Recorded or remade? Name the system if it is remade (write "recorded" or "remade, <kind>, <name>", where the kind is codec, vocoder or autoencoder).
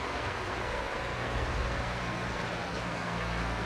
remade, codec, SNAC